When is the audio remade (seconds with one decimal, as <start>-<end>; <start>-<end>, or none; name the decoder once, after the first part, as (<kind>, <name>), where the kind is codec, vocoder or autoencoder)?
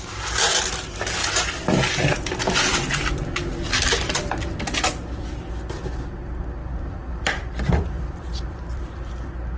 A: 1.2-5.5 (vocoder, BigVGAN v2); 6.6-9.2